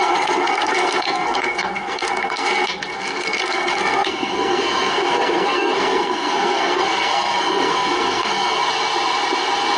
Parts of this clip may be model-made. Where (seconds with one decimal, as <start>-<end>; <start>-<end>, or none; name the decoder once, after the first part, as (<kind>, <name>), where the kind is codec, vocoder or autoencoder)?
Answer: 0.0-8.6 (codec, SNAC)